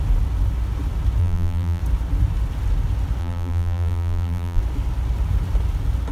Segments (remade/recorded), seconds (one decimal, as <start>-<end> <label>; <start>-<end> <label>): 0.0-1.2 recorded; 1.2-1.8 remade; 1.8-3.2 recorded; 3.2-4.6 remade; 4.6-6.1 recorded